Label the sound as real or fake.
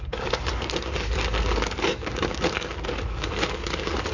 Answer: fake